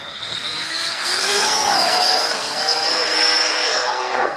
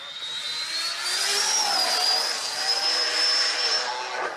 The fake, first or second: first